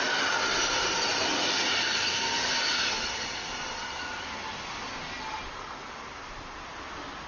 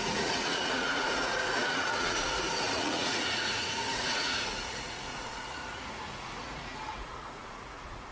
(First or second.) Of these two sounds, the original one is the first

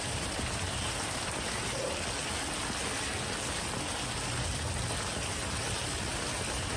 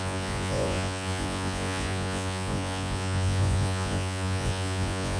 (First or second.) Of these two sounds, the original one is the first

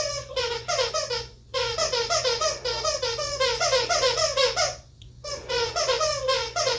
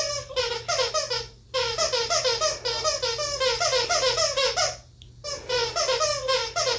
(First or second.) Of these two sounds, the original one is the second